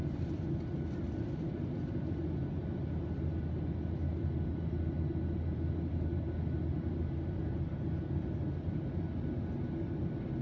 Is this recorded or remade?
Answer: recorded